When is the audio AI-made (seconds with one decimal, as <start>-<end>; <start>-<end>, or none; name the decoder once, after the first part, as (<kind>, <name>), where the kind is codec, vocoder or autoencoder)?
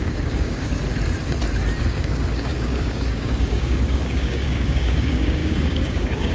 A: 0.0-0.7 (codec, DAC); 1.8-6.3